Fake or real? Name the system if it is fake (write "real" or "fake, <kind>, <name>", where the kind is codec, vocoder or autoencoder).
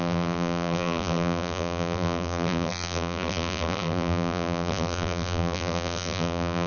fake, vocoder, BigVGAN v2